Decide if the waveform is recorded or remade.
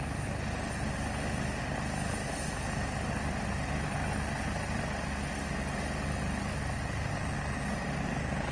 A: recorded